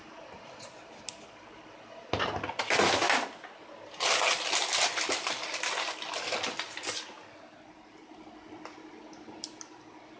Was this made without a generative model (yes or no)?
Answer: yes